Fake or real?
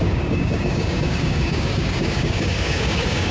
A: fake